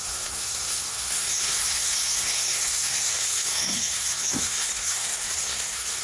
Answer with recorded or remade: remade